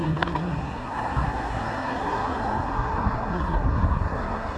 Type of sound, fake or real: fake